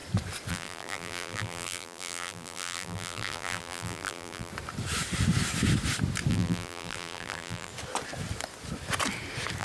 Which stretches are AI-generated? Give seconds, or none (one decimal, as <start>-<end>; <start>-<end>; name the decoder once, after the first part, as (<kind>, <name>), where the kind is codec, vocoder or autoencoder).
0.5-4.5 (vocoder, BigVGAN v2); 6.3-7.7